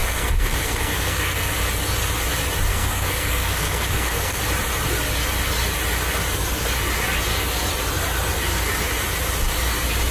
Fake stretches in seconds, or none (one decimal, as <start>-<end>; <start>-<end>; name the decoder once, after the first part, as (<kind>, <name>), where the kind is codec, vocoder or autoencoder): 0.0-1.5 (codec, SNAC); 2.7-4.4